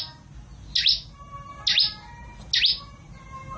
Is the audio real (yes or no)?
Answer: yes